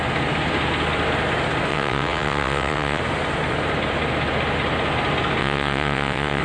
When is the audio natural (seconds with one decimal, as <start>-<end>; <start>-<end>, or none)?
0.0-1.7; 3.0-5.4